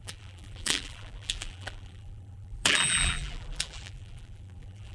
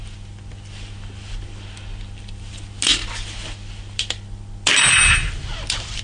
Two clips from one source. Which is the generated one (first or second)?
first